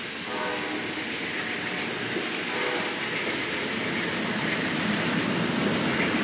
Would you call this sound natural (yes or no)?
yes